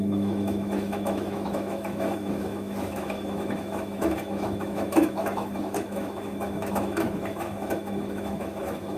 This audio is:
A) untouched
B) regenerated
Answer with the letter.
B